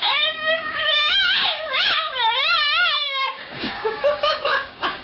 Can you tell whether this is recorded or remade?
remade